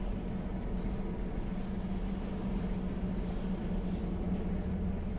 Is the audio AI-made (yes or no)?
no